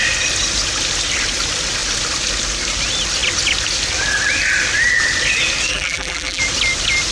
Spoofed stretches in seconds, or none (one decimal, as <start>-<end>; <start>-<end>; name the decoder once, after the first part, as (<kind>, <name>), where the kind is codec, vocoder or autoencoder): 5.7-6.4 (vocoder, BigVGAN v2)